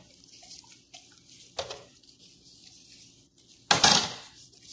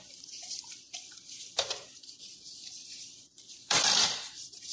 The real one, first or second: first